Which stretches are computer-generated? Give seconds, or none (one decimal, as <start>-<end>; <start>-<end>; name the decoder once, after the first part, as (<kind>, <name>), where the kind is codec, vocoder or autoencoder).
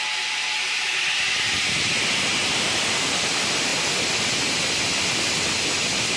none